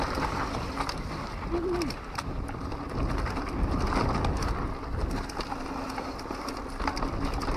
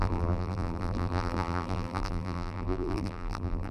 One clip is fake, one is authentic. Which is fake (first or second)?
second